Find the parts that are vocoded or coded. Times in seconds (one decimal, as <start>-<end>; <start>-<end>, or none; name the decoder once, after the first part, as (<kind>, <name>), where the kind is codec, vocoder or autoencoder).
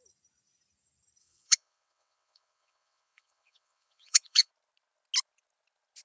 1.2-4.5 (vocoder, WaveNeXt)